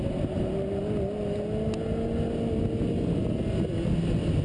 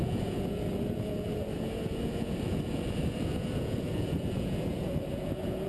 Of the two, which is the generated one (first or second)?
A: second